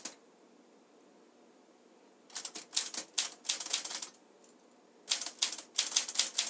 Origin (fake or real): real